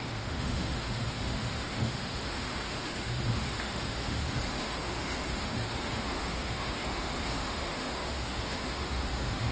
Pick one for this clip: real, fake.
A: fake